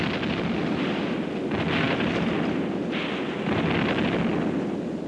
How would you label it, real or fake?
real